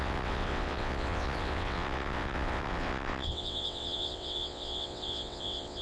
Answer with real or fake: fake